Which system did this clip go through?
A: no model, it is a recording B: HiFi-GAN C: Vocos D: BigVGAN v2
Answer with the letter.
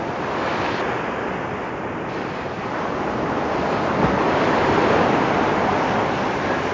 A